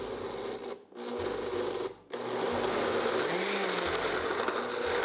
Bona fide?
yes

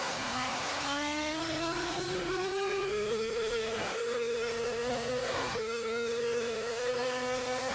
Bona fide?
no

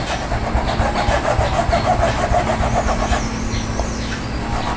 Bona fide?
yes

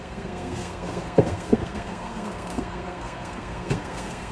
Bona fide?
no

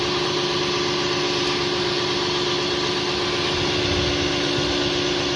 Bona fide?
yes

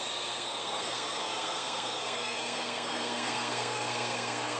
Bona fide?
no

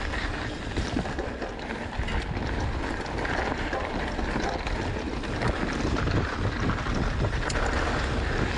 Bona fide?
yes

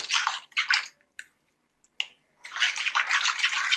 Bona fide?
yes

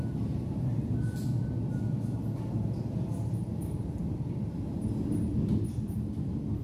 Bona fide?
yes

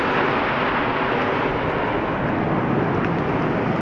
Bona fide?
yes